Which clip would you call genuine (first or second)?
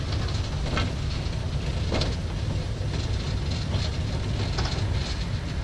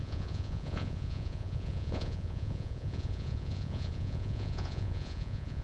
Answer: first